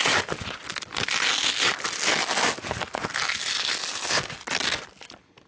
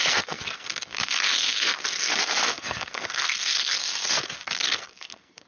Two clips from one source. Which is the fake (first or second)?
second